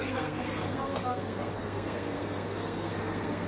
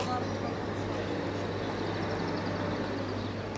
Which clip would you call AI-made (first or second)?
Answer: first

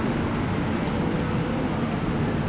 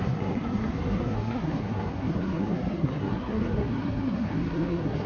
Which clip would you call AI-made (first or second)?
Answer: second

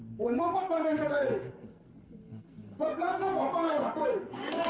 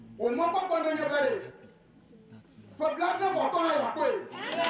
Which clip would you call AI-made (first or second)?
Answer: first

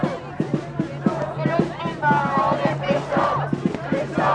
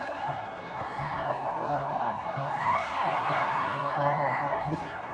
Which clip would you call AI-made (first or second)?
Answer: second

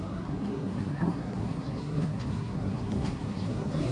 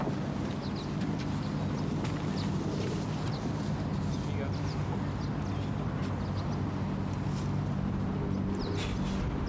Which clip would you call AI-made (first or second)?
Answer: first